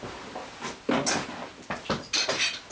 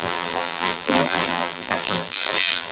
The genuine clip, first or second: first